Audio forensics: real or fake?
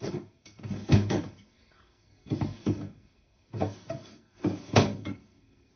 fake